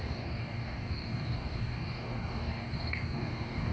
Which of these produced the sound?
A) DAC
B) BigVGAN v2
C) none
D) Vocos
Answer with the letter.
A